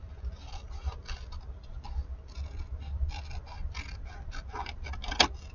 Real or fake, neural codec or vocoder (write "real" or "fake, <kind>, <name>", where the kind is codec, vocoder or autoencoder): real